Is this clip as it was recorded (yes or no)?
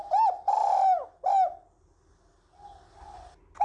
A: yes